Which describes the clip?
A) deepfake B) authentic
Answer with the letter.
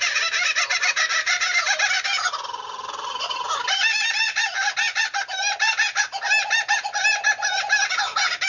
B